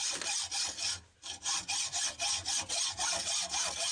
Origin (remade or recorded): recorded